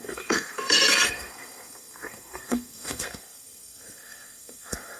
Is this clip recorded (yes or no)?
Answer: no